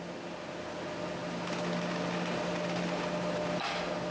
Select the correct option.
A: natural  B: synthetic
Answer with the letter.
A